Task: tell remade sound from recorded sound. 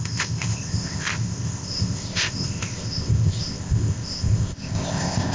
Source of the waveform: remade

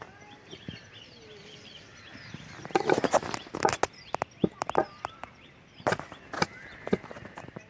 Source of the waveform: recorded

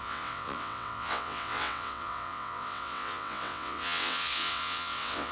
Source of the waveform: remade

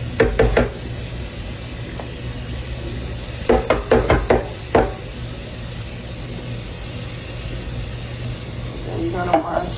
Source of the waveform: recorded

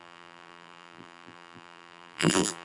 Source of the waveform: remade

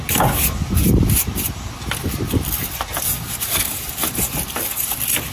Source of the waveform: recorded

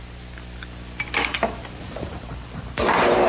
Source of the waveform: remade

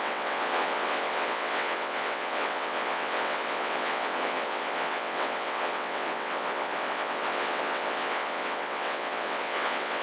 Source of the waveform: remade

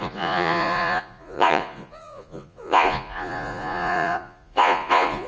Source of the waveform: remade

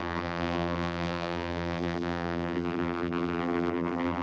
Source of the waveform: remade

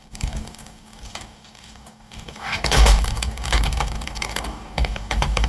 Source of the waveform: remade